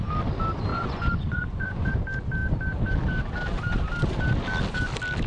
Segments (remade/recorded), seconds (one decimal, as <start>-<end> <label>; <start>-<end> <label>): 0.0-0.7 recorded; 0.7-1.9 remade; 1.9-5.3 recorded